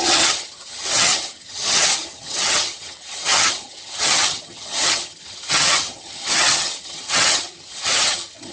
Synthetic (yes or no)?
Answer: yes